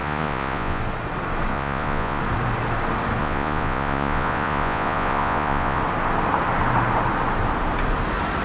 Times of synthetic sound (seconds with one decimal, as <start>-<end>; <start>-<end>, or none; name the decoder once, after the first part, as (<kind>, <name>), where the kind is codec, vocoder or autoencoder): 0.0-0.8 (vocoder, Vocos); 1.5-2.2; 3.2-5.8